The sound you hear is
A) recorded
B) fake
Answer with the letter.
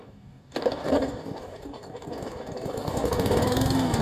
B